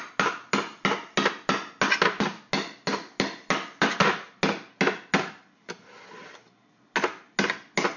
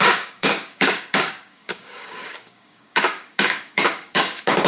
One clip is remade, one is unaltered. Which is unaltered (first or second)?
first